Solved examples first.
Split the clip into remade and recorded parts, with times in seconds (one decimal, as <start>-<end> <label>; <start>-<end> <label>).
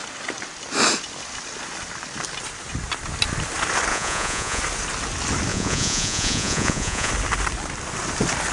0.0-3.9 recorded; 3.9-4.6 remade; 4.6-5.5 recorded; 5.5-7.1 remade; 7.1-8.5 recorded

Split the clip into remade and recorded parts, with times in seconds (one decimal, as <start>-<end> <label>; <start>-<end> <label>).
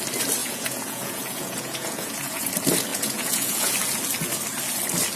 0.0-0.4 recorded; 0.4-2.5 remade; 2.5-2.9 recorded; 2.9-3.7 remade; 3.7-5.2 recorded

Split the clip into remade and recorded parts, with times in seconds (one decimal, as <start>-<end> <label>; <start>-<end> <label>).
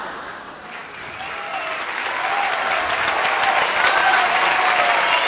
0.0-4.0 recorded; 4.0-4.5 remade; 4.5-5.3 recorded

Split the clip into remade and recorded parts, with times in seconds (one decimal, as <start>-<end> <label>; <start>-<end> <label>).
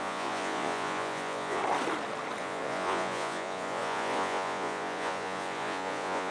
0.0-1.6 remade; 1.6-2.4 recorded; 2.4-6.3 remade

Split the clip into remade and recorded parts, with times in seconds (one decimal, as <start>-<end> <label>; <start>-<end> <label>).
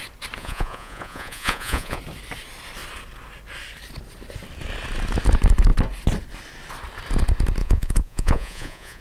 0.0-0.4 recorded; 0.4-2.0 remade; 2.0-7.6 recorded; 7.6-9.0 remade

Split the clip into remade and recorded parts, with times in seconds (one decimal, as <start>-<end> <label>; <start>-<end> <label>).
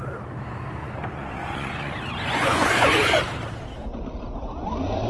0.0-0.8 recorded; 0.8-3.2 remade; 3.2-5.1 recorded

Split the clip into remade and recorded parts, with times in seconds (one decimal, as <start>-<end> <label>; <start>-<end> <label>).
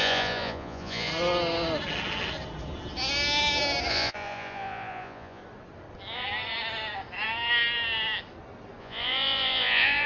0.0-1.1 remade; 1.1-3.9 recorded; 3.9-5.4 remade; 5.4-8.8 recorded; 8.8-10.1 remade